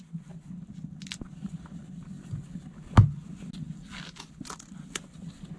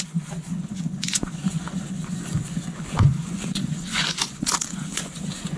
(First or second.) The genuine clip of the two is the first